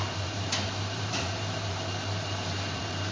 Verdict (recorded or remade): remade